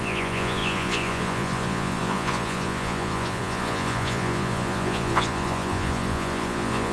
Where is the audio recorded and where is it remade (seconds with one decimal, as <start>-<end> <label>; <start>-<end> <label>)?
0.0-6.9 remade